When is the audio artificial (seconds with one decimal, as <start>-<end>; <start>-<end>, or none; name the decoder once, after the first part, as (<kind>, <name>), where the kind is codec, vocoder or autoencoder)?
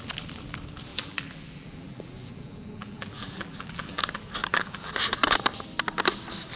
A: 0.9-4.0 (vocoder, BigVGAN v2); 4.4-4.9